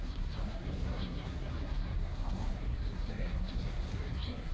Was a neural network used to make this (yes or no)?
yes